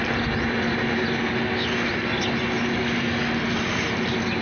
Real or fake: real